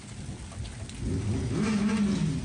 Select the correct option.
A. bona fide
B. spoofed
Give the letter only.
A